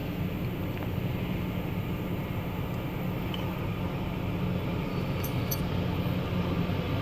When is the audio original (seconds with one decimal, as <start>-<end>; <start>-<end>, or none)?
0.0-4.9; 5.6-7.0